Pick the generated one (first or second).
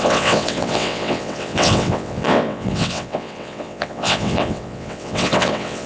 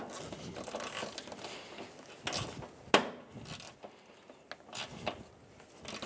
first